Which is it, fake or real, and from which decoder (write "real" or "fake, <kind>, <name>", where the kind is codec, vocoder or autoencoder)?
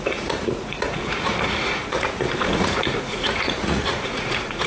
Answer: fake, vocoder, Vocos